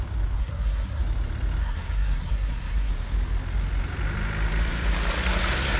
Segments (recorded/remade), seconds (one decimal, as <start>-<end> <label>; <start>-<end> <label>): 0.0-0.4 recorded; 0.4-1.0 remade; 1.0-1.6 recorded; 1.6-2.9 remade; 2.9-5.8 recorded